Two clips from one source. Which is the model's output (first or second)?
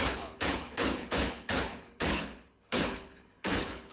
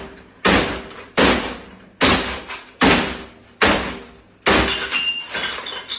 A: first